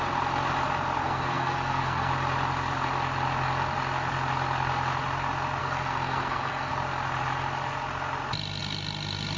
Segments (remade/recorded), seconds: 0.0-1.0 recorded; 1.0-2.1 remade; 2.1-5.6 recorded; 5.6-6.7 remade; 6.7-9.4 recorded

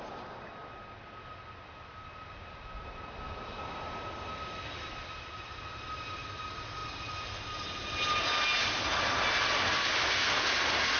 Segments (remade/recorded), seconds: 0.0-11.0 recorded

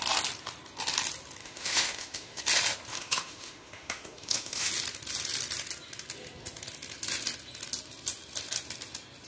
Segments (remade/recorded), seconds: 0.0-1.4 recorded; 1.4-2.4 remade; 2.4-2.9 recorded; 2.9-4.7 remade; 4.7-9.3 recorded